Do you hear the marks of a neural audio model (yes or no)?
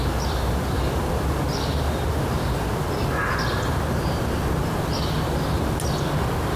no